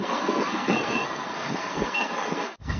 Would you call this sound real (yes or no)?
no